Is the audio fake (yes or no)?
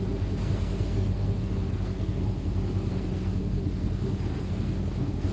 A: yes